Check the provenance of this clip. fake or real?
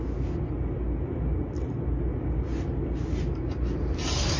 real